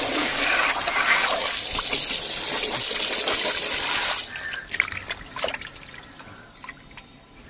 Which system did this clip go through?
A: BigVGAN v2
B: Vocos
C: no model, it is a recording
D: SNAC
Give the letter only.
C